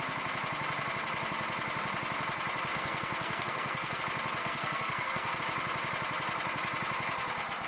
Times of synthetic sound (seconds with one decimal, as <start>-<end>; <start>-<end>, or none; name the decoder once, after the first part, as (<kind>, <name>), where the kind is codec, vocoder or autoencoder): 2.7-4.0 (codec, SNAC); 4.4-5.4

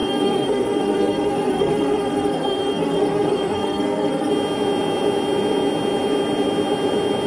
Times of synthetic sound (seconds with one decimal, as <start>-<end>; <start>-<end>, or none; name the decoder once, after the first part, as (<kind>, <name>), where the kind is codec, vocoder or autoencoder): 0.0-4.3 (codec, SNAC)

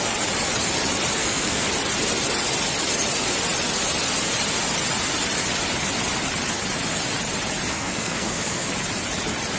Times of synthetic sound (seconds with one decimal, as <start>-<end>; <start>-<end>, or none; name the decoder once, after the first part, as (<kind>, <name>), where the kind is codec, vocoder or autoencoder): 1.2-1.7 (codec, SNAC); 7.7-8.7